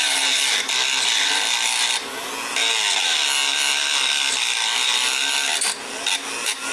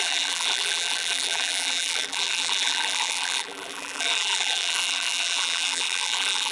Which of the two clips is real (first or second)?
first